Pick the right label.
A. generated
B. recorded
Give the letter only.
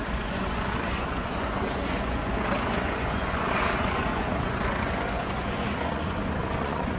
A